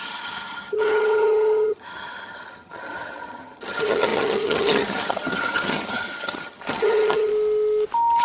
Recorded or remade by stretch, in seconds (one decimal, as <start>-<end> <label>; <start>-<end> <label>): 0.0-7.3 remade; 7.3-8.2 recorded